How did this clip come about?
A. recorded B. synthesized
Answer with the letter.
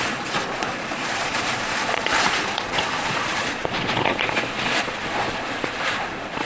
B